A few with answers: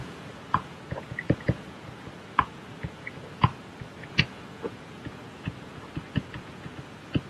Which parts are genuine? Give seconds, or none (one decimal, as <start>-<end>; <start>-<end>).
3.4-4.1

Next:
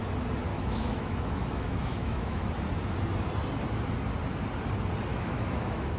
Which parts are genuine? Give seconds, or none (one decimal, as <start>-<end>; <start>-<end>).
0.0-0.5; 2.5-5.1

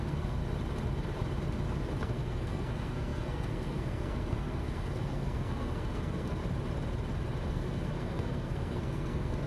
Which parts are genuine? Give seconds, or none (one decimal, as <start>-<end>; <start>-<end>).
0.4-2.0; 6.4-7.5

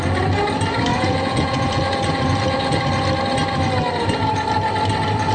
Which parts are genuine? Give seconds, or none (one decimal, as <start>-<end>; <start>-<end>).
0.0-0.9; 2.8-5.3

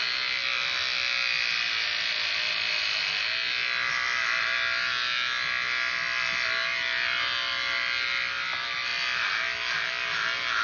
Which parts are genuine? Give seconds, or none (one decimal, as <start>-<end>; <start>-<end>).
0.0-10.6

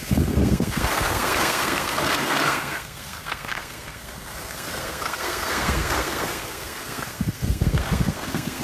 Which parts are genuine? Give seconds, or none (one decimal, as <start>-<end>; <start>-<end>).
none

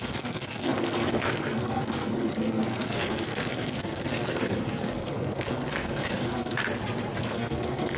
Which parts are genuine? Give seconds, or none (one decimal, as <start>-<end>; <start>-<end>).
6.6-7.2

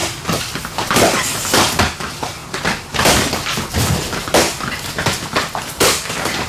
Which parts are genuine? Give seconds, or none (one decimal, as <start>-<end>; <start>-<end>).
0.0-6.5